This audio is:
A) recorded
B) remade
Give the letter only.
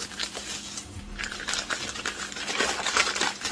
B